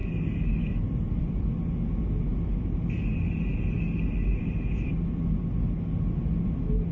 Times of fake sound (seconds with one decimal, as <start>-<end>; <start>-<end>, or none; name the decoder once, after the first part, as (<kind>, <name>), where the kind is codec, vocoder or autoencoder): none

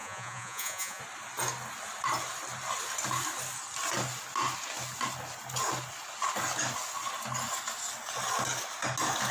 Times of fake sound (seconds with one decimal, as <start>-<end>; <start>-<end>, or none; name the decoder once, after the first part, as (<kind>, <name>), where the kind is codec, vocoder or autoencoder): 0.0-1.0 (vocoder, Vocos)

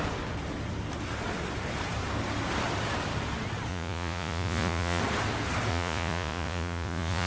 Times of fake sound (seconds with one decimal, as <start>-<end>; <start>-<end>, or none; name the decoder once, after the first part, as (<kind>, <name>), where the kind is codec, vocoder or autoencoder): 3.7-5.0 (vocoder, Vocos); 5.7-7.3

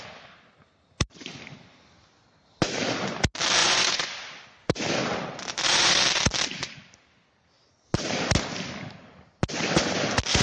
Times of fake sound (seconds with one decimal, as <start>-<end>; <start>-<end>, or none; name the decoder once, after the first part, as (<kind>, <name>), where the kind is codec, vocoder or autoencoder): 3.6-4.2 (vocoder, Vocos)

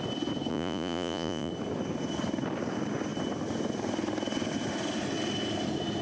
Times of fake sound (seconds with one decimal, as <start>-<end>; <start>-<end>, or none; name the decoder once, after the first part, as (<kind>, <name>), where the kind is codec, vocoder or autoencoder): 0.5-1.5 (vocoder, Vocos)